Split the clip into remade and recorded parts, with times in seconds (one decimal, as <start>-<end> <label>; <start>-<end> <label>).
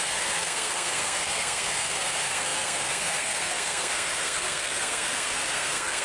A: 0.0-6.0 remade